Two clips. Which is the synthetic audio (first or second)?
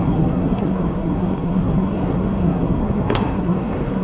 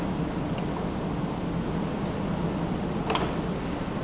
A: first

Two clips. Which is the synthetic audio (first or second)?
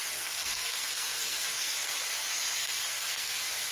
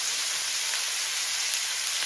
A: first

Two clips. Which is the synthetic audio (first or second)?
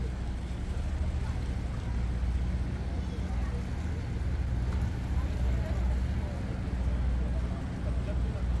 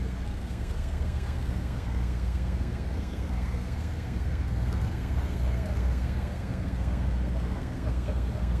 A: second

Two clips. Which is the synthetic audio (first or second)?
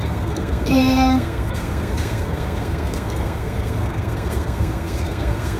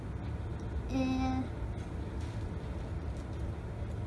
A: first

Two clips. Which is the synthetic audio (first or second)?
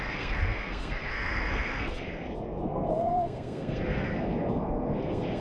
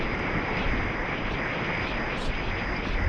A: first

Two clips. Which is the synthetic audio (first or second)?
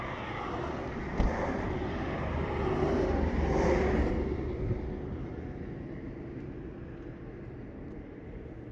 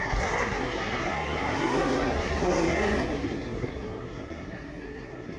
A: second